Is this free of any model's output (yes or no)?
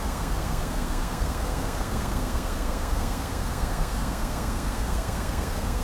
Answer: no